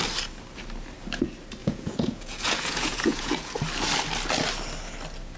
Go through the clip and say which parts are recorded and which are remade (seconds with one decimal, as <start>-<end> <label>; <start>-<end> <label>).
0.0-1.6 recorded; 1.6-3.5 remade; 3.5-5.4 recorded